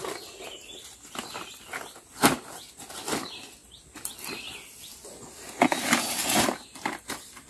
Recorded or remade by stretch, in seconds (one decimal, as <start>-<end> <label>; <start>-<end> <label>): 0.0-7.5 recorded